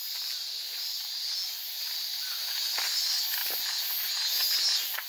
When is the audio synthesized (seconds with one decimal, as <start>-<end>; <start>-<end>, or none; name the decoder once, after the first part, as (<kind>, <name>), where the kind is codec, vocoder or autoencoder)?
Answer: 0.0-1.1 (vocoder, BigVGAN v2)